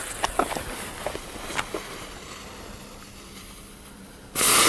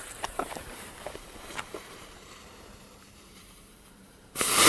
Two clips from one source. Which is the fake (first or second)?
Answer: second